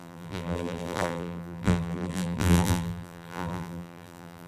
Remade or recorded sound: remade